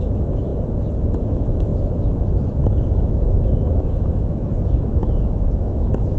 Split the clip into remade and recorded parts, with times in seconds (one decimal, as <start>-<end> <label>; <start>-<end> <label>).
0.0-0.5 remade; 0.5-1.2 recorded; 1.2-6.2 remade